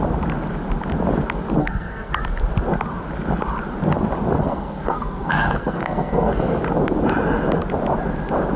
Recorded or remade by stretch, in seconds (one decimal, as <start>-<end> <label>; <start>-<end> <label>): 0.0-1.6 recorded; 1.6-2.1 remade; 2.1-4.4 recorded; 4.4-6.6 remade; 6.6-8.6 recorded